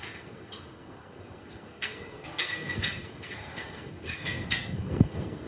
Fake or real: fake